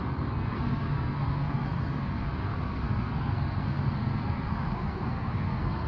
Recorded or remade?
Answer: remade